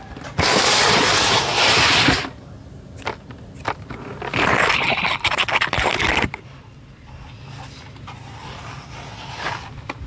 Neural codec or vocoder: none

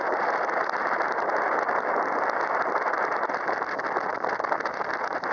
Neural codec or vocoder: vocoder, BigVGAN v2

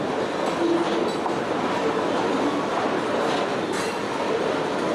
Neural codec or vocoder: none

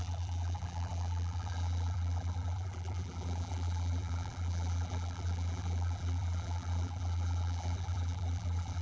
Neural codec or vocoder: vocoder, BigVGAN v2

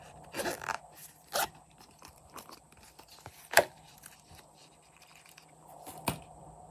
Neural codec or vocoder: vocoder, BigVGAN v2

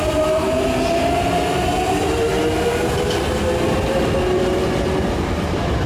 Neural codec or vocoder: none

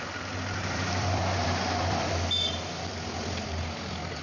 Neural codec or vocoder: vocoder, BigVGAN v2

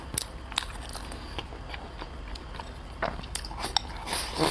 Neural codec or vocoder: none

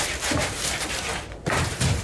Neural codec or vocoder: vocoder, BigVGAN v2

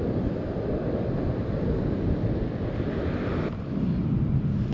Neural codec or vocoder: none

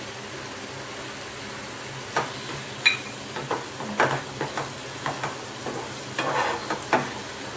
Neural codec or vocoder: none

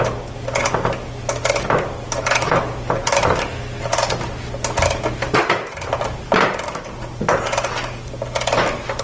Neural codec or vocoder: none